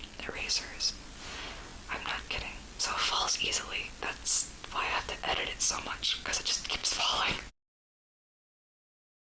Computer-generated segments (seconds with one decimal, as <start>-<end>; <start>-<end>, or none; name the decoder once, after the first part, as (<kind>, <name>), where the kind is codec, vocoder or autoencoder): none